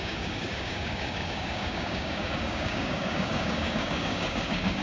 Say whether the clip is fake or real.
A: fake